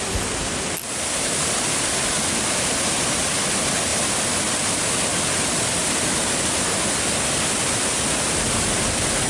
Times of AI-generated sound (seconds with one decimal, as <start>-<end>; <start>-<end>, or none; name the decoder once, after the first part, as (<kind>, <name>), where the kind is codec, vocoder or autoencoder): none